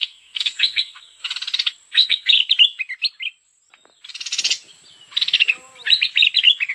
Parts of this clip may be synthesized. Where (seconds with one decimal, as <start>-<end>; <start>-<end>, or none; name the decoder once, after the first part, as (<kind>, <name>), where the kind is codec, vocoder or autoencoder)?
0.0-1.2 (codec, SNAC); 1.9-2.4